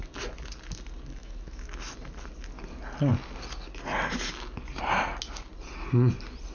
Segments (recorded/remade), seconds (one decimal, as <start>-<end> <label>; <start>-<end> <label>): 0.0-1.2 recorded; 1.2-1.7 remade; 1.7-6.5 recorded

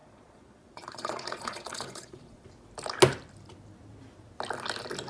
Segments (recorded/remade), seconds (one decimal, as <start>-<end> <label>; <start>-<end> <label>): 0.0-2.5 remade; 2.5-5.1 recorded

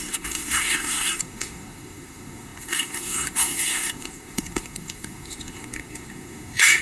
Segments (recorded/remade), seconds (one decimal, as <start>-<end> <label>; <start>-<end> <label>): 0.0-6.8 remade

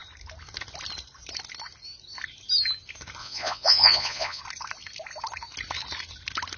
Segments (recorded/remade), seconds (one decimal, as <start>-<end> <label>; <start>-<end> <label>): 0.0-3.2 recorded; 3.2-4.4 remade; 4.4-6.6 recorded

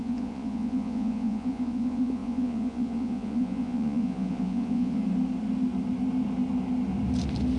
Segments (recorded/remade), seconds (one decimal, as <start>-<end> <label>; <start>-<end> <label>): 0.0-5.0 remade; 5.0-7.6 recorded

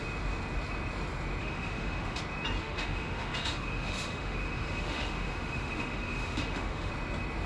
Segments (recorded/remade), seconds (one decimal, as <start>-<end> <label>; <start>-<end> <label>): 0.0-1.4 recorded; 1.4-2.2 remade; 2.2-2.6 recorded; 2.6-6.9 remade; 6.9-7.5 recorded

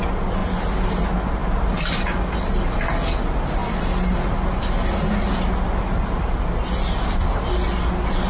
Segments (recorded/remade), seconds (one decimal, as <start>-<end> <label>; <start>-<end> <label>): 0.0-8.3 recorded

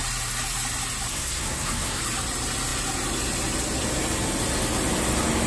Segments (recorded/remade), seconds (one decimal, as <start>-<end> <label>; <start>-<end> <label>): 0.0-1.1 recorded; 1.1-2.0 remade; 2.0-5.5 recorded